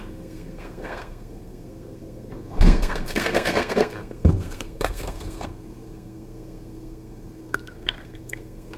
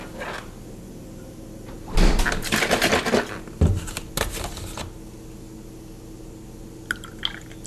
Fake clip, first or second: first